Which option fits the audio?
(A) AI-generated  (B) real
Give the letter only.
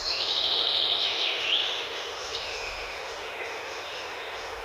A